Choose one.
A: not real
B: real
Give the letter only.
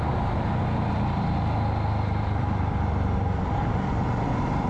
B